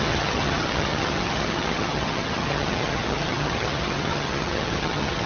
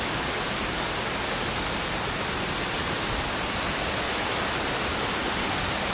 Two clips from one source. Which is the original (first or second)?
second